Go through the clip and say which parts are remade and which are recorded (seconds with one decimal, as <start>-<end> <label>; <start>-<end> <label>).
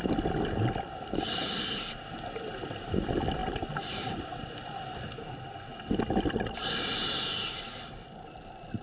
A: 0.0-8.8 recorded